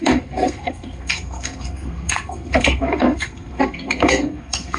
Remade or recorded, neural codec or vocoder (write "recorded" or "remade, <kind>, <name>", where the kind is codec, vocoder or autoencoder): remade, codec, SNAC